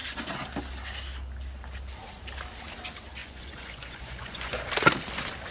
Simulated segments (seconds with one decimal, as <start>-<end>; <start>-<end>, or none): 3.2-4.7